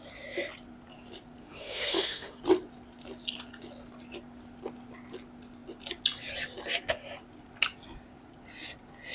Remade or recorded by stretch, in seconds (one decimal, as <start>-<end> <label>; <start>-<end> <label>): 0.0-1.4 recorded; 1.4-2.4 remade; 2.4-9.1 recorded